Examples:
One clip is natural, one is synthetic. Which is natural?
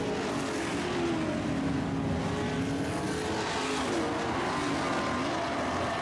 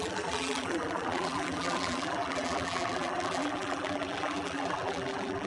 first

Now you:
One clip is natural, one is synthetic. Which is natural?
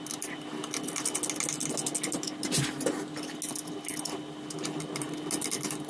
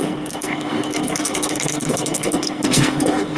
first